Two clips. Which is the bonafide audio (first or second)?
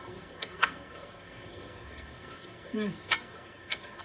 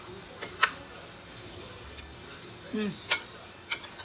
second